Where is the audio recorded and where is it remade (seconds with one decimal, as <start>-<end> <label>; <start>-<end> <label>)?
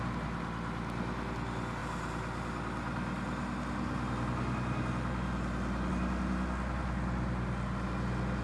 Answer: 0.0-8.4 recorded